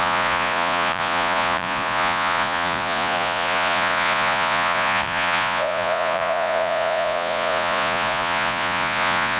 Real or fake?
fake